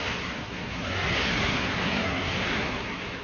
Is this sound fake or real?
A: fake